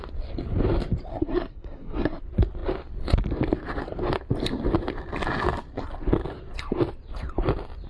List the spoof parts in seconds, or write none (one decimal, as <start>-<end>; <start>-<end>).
1.1-2.2